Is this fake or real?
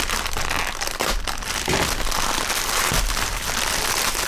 real